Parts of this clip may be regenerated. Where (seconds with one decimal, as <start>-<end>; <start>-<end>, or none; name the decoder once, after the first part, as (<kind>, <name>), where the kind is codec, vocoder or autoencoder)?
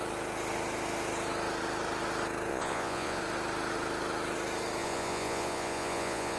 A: 2.5-3.2 (vocoder, Vocos); 4.8-6.4